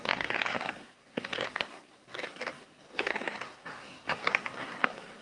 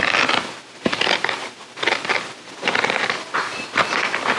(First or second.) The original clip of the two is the second